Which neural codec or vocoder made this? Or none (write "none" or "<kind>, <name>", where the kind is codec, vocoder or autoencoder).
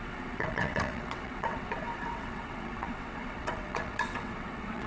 vocoder, WaveNeXt